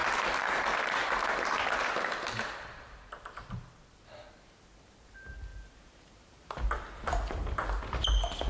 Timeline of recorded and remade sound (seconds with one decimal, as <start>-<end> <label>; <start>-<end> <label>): 0.0-5.5 recorded; 5.5-7.8 remade; 7.8-8.5 recorded